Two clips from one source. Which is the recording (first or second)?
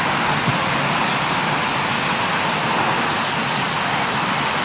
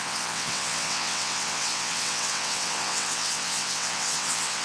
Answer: first